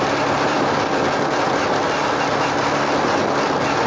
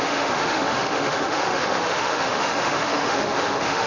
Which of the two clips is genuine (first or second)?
first